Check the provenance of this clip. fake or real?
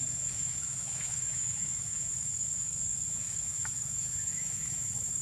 fake